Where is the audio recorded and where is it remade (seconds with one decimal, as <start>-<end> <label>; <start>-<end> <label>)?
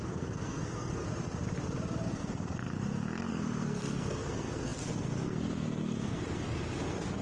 0.0-1.0 remade; 1.0-2.1 recorded; 2.1-2.6 remade; 2.6-3.3 recorded; 3.3-7.2 remade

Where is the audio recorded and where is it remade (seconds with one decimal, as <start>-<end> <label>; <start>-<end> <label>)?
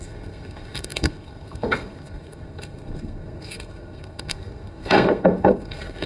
0.0-6.1 remade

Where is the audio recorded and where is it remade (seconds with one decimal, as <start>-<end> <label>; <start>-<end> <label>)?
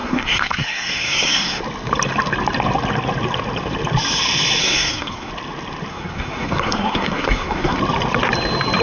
0.0-1.6 remade; 1.6-4.6 recorded; 4.6-5.3 remade; 5.3-5.9 recorded; 5.9-7.8 remade; 7.8-8.8 recorded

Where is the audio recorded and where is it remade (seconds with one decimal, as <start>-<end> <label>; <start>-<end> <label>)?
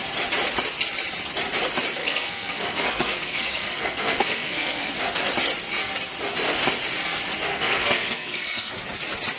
0.0-2.0 recorded; 2.0-4.9 remade; 4.9-7.5 recorded; 7.5-8.7 remade; 8.7-9.4 recorded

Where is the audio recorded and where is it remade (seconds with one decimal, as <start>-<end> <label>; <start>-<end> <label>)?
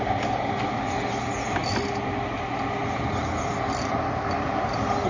0.0-5.1 recorded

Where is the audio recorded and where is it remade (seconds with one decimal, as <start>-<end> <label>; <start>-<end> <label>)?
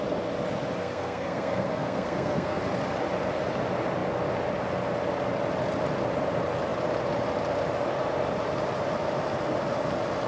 0.0-0.8 recorded; 0.8-2.6 remade; 2.6-10.3 recorded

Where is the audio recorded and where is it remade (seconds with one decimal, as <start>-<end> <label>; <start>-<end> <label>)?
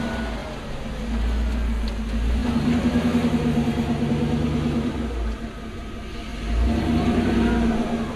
0.0-8.2 recorded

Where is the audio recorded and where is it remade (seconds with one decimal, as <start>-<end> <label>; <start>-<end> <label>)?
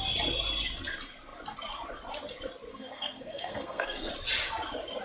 0.0-2.7 recorded; 2.7-4.1 remade; 4.1-5.0 recorded